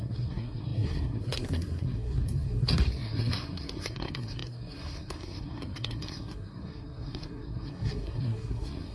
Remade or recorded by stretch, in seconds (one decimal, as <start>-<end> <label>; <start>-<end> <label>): 0.0-8.9 remade